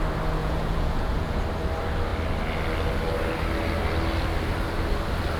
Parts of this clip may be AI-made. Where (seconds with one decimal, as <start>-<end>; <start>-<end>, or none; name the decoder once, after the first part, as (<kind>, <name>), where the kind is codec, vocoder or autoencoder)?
0.4-1.4 (vocoder, Vocos)